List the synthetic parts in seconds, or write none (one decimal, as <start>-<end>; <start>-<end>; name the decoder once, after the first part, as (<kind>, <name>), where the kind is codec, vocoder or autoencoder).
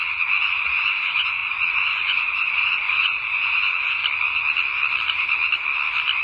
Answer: 0.0-4.0 (vocoder, Vocos)